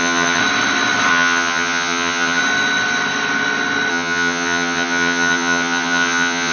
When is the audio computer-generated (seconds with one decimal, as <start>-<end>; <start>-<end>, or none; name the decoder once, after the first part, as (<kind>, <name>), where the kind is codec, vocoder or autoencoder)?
0.0-0.4 (vocoder, HiFi-GAN); 1.1-2.4; 3.9-6.5